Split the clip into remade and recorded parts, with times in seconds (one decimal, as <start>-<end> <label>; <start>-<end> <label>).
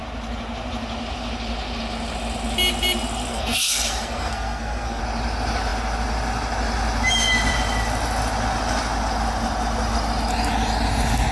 0.0-3.3 recorded; 3.3-5.0 remade; 5.0-11.3 recorded